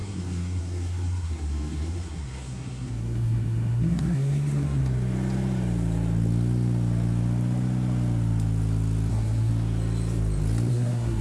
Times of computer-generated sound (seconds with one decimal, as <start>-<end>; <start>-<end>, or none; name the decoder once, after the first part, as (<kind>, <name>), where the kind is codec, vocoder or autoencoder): 0.0-4.8 (codec, SNAC); 9.1-9.5; 10.7-11.2